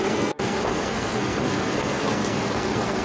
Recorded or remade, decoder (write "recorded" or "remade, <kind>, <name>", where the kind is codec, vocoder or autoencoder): remade, codec, SNAC